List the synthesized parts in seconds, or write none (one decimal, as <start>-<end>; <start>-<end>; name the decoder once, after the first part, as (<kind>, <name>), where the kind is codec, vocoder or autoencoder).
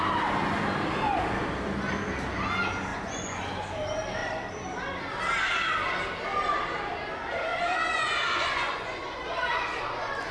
2.9-3.4 (vocoder, Vocos); 7.5-9.2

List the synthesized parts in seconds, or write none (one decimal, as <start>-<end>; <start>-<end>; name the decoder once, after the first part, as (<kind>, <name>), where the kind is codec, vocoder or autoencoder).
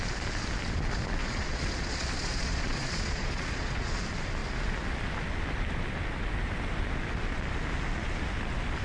1.2-4.0 (vocoder, Vocos)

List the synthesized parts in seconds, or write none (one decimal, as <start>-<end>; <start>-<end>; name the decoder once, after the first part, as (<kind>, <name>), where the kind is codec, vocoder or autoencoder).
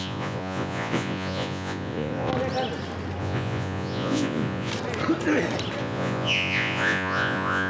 0.0-2.3 (vocoder, Vocos); 3.2-4.7; 5.8-7.7